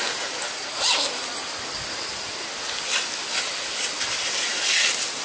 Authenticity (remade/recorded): recorded